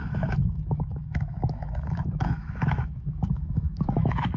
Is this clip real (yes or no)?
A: no